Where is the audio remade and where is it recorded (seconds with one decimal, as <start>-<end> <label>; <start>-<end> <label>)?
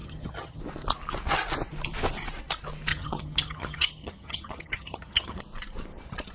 0.0-0.6 remade; 0.6-2.9 recorded; 2.9-5.4 remade; 5.4-6.3 recorded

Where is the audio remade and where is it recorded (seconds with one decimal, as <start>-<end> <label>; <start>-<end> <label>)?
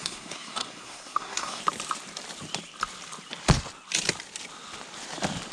0.0-1.6 remade; 1.6-5.5 recorded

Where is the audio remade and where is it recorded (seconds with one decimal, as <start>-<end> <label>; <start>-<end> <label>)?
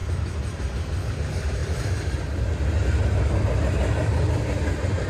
0.0-5.1 recorded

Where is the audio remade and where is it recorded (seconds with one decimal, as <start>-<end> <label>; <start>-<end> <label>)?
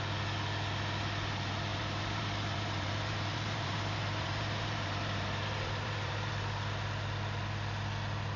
0.0-1.7 recorded; 1.7-6.3 remade; 6.3-8.4 recorded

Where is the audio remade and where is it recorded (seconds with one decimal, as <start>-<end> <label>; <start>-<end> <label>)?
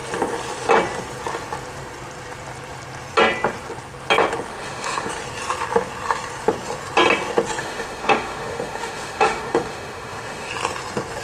0.0-4.5 recorded; 4.5-5.1 remade; 5.1-7.6 recorded; 7.6-10.5 remade; 10.5-11.2 recorded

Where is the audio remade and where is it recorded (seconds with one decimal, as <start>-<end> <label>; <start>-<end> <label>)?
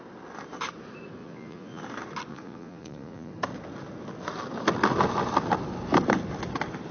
0.0-1.2 recorded; 1.2-1.8 remade; 1.8-2.3 recorded; 2.3-3.3 remade; 3.3-6.9 recorded